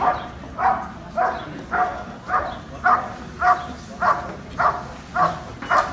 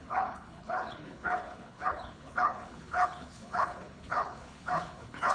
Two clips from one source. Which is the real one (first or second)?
first